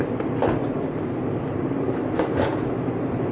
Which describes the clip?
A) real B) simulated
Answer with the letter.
A